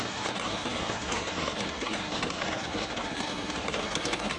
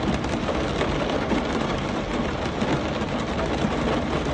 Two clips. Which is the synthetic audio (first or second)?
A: first